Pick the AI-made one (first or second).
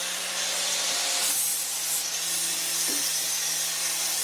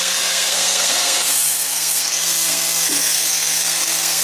second